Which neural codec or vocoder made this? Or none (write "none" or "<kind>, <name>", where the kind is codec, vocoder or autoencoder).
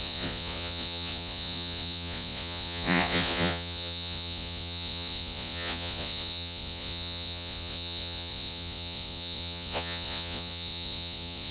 vocoder, Vocos